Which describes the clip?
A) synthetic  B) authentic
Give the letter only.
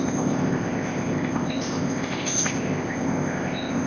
A